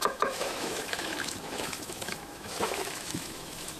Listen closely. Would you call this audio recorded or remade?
remade